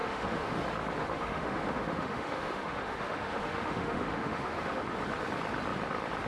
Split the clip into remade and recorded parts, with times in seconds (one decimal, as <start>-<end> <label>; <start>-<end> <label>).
0.0-0.6 remade; 0.6-1.0 recorded; 1.0-4.8 remade; 4.8-6.3 recorded